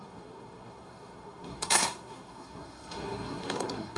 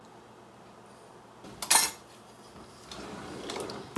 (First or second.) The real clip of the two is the second